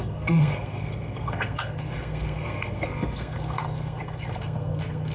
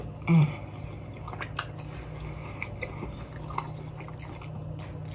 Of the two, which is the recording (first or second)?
second